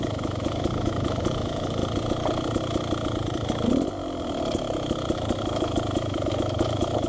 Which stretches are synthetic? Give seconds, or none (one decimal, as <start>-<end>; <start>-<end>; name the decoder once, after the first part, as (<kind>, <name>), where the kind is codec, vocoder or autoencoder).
0.0-1.8 (autoencoder, DAC-VAE); 5.4-7.1